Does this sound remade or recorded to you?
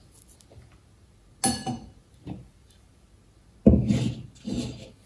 recorded